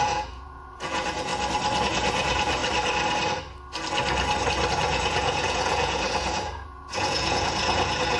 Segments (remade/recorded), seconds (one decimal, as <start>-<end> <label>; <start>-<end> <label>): 0.0-1.3 remade; 1.3-1.8 recorded; 1.8-2.6 remade; 2.6-4.7 recorded; 4.7-8.2 remade